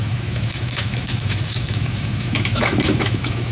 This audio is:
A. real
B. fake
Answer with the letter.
B